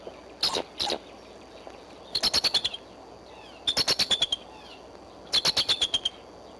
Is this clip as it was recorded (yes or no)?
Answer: yes